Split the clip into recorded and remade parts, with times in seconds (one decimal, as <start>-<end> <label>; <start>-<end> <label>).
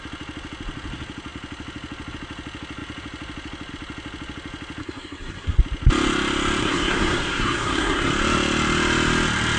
0.0-4.8 recorded; 4.8-5.6 remade; 5.6-6.6 recorded; 6.6-8.1 remade; 8.1-9.6 recorded